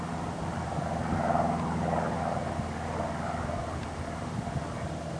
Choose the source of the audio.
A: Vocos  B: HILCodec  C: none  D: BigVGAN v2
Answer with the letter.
C